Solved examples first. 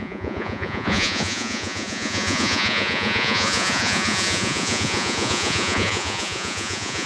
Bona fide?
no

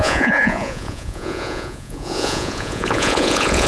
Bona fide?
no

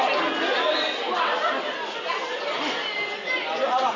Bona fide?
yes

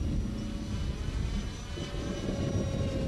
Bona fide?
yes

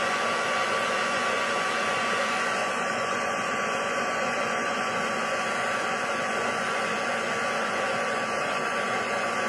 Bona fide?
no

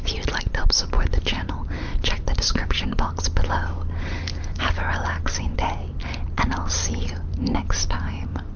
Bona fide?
yes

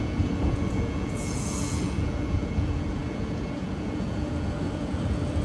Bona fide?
no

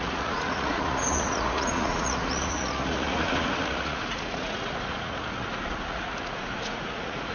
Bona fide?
no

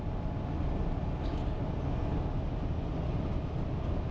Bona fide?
yes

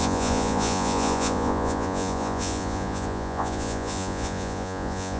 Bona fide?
no